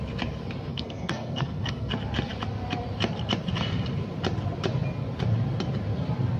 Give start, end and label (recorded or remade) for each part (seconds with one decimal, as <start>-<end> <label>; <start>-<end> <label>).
0.0-0.7 recorded; 0.7-1.9 remade; 1.9-6.4 recorded